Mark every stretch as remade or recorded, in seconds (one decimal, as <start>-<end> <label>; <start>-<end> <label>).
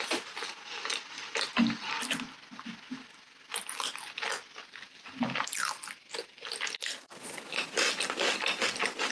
0.0-9.1 recorded